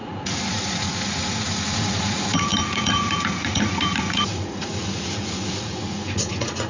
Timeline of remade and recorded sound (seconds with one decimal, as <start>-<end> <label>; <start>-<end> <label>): 0.0-6.7 remade

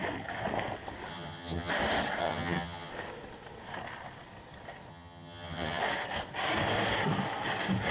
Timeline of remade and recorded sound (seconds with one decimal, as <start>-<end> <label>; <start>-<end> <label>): 0.0-1.1 recorded; 1.1-1.7 remade; 1.7-2.2 recorded; 2.2-2.9 remade; 2.9-4.9 recorded; 4.9-5.8 remade; 5.8-7.9 recorded